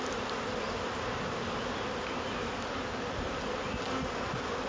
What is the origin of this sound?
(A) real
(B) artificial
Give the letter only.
A